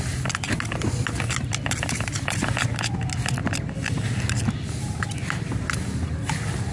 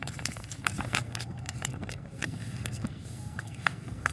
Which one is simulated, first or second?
second